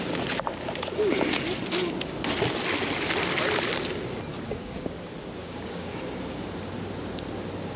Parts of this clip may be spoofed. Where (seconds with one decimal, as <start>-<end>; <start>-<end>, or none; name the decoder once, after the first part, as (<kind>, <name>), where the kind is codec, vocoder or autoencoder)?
4.3-5.0 (codec, DAC); 5.4-6.0